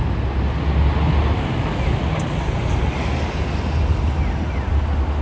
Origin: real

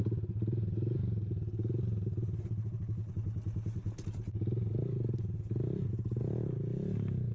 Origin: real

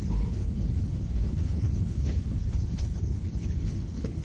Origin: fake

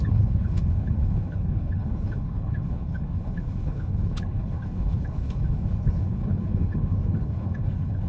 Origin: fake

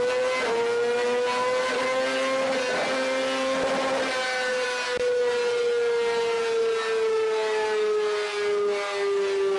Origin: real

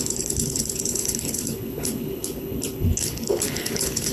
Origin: fake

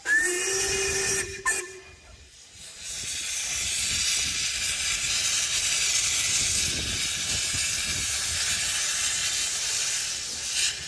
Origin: real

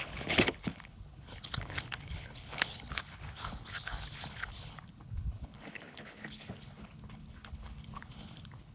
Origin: fake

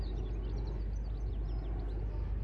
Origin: real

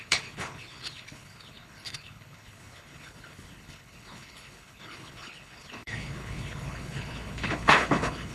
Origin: fake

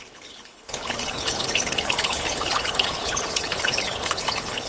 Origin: fake